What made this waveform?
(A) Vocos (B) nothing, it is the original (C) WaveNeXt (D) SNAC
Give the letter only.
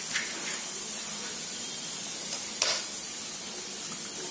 B